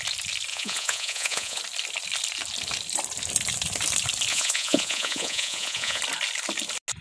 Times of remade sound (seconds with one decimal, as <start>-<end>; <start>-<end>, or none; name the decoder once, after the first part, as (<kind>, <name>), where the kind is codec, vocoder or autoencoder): 0.5-1.6 (vocoder, Vocos); 4.3-6.0